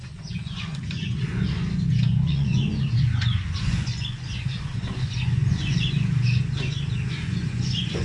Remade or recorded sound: remade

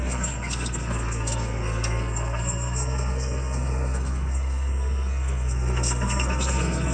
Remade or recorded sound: remade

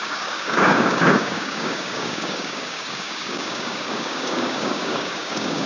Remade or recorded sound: remade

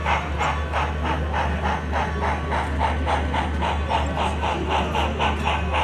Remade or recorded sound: recorded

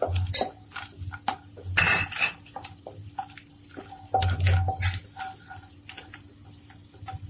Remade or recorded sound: recorded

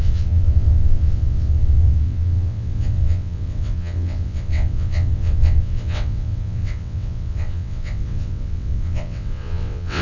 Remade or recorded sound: remade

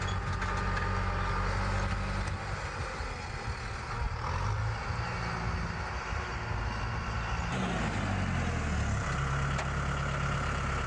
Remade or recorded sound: recorded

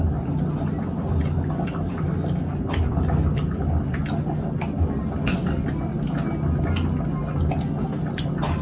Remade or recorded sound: recorded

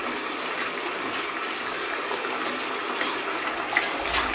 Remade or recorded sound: recorded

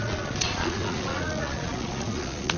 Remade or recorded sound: remade